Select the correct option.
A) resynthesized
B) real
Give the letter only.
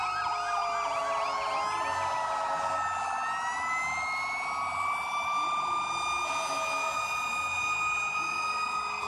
B